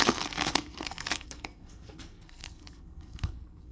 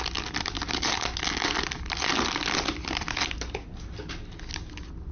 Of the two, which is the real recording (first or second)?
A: second